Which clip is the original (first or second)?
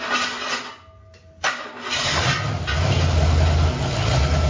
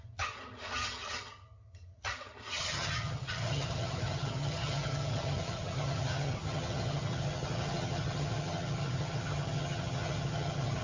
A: first